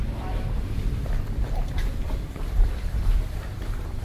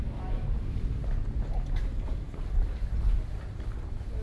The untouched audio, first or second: second